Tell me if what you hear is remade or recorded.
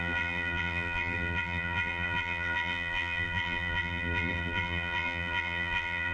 remade